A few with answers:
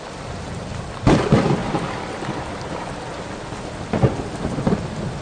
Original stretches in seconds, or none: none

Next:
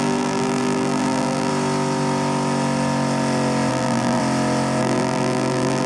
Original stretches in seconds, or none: 1.5-3.7; 4.2-4.8